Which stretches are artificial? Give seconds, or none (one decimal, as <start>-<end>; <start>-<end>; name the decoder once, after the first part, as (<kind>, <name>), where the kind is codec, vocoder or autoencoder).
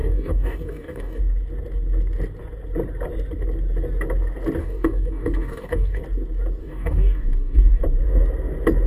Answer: 0.0-1.2 (codec, DAC); 4.6-6.0; 6.6-7.8